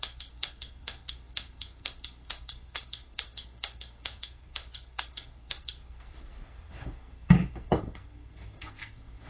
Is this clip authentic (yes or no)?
no